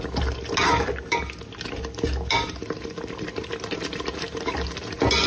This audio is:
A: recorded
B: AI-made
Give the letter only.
A